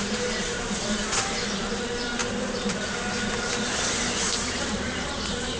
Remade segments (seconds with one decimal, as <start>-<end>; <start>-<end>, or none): 0.0-2.2; 3.7-5.6